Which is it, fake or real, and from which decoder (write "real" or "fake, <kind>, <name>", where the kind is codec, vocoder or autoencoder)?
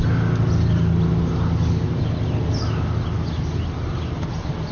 real